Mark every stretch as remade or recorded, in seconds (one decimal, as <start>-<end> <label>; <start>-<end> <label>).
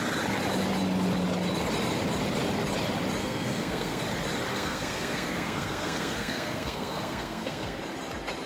0.0-3.2 recorded; 3.2-4.0 remade; 4.0-4.5 recorded; 4.5-7.8 remade; 7.8-8.5 recorded